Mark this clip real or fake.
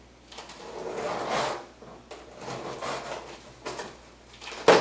real